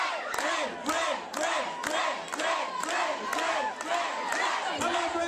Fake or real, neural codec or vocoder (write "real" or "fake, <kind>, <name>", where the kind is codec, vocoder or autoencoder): real